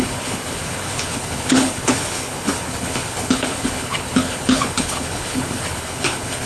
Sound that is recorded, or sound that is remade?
remade